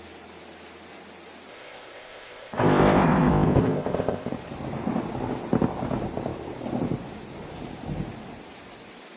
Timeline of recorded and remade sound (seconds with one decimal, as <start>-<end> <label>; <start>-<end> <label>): 0.0-1.5 recorded; 1.5-4.3 remade; 4.3-9.2 recorded